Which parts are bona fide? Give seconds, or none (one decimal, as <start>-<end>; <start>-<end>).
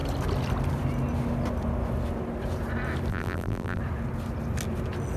0.0-3.1; 3.8-5.2